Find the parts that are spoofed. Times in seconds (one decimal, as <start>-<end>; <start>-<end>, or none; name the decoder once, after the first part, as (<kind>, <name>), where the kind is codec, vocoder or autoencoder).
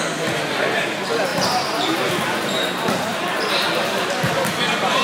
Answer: 1.3-4.3 (vocoder, BigVGAN v2)